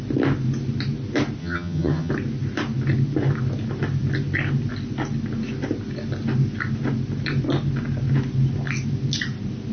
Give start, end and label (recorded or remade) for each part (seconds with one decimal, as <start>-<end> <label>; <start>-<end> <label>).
0.0-1.4 recorded; 1.4-2.1 remade; 2.1-9.7 recorded